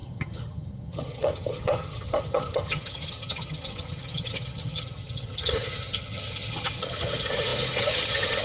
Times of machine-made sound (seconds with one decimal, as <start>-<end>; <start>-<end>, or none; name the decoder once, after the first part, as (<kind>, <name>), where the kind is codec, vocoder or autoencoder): 0.0-8.4 (vocoder, HiFi-GAN)